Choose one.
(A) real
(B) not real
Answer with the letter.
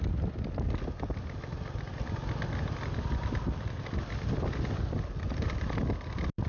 A